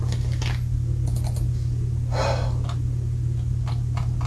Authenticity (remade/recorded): recorded